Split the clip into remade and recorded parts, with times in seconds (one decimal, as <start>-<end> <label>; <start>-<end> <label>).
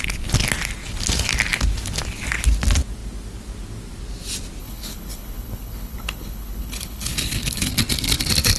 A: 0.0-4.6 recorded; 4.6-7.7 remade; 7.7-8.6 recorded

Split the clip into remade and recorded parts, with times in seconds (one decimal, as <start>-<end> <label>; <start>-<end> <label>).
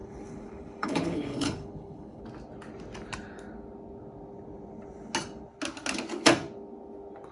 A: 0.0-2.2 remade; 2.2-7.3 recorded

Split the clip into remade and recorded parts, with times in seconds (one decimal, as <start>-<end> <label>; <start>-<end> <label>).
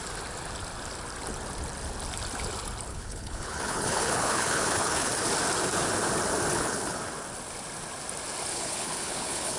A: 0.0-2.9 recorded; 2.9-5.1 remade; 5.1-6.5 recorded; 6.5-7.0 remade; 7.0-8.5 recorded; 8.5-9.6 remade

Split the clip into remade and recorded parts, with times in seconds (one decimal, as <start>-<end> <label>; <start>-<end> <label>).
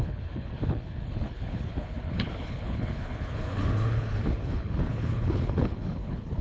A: 0.0-6.4 remade